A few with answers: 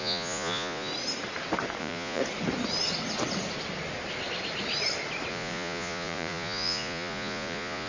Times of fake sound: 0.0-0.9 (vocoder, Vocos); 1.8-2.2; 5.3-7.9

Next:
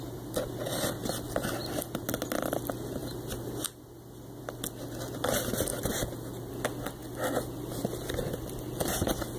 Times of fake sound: 1.0-1.8 (vocoder, BigVGAN v2); 3.0-3.8; 5.7-6.5; 7.0-7.8

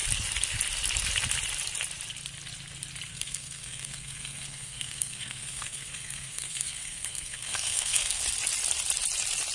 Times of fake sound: 3.1-8.2 (codec, SNAC)